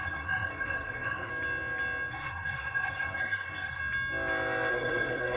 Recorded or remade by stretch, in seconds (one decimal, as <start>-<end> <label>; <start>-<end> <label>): 0.0-1.3 remade; 1.3-2.1 recorded; 2.1-3.8 remade; 3.8-4.7 recorded; 4.7-5.4 remade